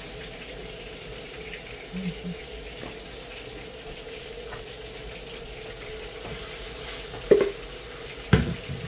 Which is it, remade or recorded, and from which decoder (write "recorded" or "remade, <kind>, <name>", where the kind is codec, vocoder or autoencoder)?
recorded